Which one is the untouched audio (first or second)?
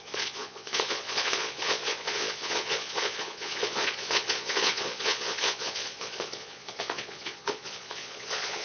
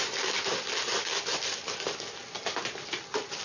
second